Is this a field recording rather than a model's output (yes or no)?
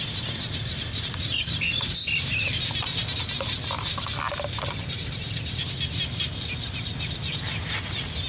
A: yes